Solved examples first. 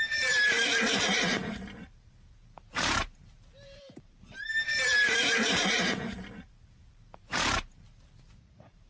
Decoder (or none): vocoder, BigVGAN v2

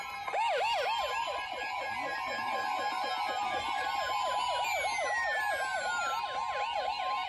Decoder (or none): none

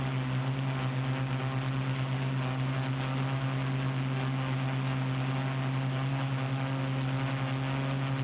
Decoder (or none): none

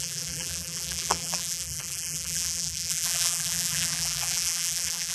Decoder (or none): vocoder, BigVGAN v2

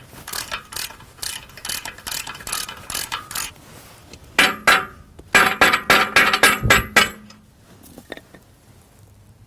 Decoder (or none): none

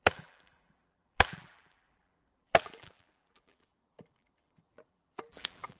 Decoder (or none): vocoder, BigVGAN v2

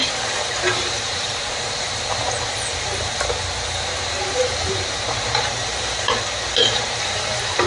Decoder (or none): vocoder, BigVGAN v2